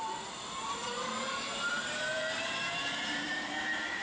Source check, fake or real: fake